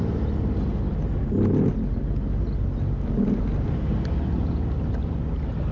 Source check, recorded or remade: recorded